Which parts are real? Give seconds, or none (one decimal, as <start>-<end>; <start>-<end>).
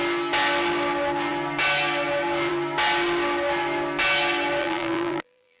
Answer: 0.0-4.6